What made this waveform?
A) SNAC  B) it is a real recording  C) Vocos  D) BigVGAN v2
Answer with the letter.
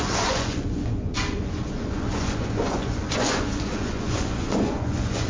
C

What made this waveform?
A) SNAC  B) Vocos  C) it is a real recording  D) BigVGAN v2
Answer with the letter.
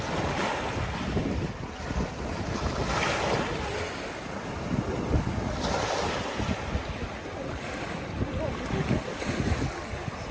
C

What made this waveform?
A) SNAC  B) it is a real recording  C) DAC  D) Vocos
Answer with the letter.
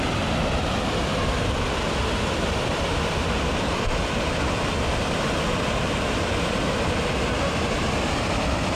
B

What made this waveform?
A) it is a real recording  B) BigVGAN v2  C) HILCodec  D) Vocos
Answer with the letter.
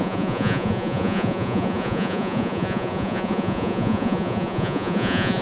D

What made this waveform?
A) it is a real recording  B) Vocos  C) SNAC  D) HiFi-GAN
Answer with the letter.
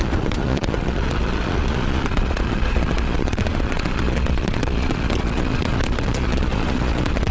B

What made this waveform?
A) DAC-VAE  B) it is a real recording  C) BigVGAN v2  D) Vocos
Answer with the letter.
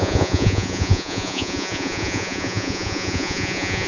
D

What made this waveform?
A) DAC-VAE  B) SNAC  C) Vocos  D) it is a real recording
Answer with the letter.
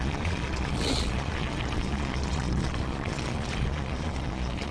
C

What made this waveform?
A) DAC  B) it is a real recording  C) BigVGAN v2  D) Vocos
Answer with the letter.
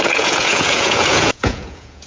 D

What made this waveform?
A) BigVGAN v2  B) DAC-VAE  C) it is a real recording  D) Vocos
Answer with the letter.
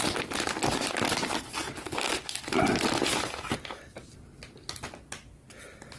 C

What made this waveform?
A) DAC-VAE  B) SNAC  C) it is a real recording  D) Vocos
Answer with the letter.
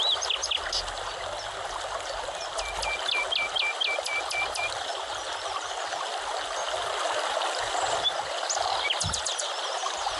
C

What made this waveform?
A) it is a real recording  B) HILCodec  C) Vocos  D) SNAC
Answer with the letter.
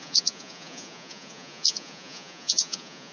C